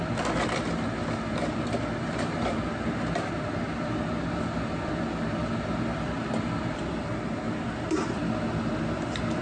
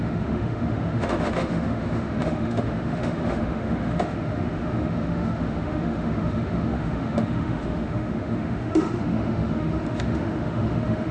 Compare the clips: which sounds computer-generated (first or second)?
second